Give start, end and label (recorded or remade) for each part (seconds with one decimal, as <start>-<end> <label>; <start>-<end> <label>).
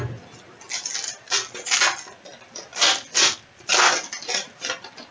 0.0-5.1 recorded